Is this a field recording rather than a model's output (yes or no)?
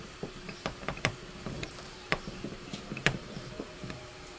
no